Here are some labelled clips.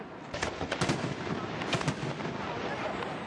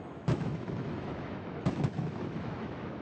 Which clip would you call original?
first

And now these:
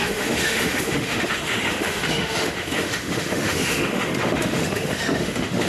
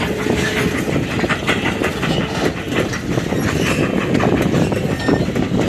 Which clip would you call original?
second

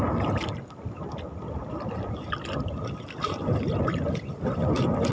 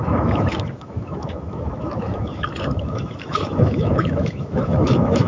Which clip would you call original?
first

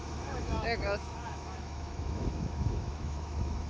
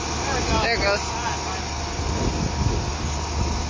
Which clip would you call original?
second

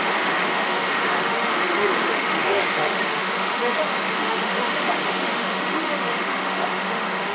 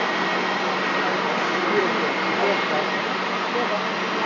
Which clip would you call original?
second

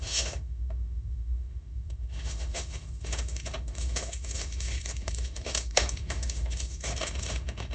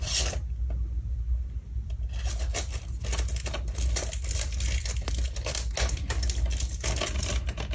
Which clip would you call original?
second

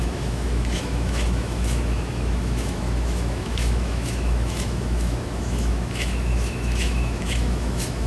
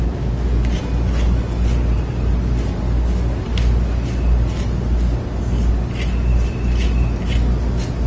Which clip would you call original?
second